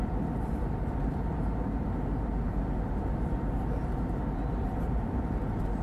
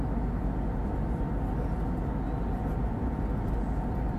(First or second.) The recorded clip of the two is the second